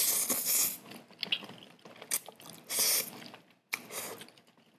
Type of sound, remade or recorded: recorded